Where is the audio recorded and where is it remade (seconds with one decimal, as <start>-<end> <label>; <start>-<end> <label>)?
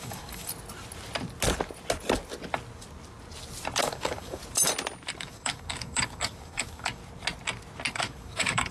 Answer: 0.0-0.5 remade; 0.5-3.8 recorded; 3.8-4.4 remade; 4.4-5.2 recorded; 5.2-7.0 remade; 7.0-7.9 recorded; 7.9-8.7 remade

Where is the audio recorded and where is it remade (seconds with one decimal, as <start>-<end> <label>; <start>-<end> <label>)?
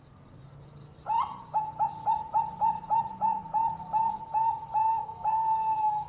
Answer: 0.0-4.8 recorded; 4.8-6.1 remade